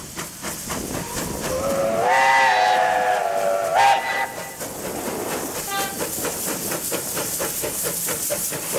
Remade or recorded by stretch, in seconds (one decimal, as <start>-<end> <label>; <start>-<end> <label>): 0.0-8.8 recorded